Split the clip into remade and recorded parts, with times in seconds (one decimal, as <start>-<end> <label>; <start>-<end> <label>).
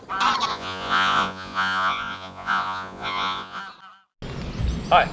0.0-0.5 recorded; 0.5-3.6 remade; 3.6-5.1 recorded